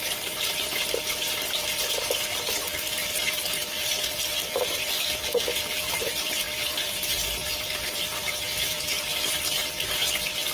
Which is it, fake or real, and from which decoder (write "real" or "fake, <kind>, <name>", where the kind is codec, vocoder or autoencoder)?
fake, vocoder, BigVGAN v2